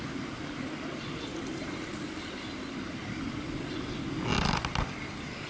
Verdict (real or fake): real